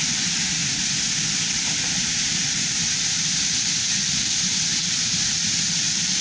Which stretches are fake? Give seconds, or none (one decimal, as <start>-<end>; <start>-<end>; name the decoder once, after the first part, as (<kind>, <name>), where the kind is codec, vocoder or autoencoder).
0.0-6.2 (vocoder, BigVGAN v2)